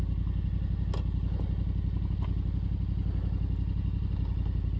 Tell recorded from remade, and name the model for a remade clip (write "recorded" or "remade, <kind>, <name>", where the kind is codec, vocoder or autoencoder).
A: recorded